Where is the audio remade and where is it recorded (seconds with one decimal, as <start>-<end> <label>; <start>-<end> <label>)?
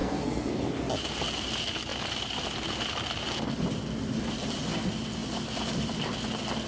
0.0-0.7 remade; 0.7-6.7 recorded